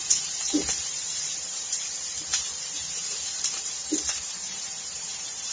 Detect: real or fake fake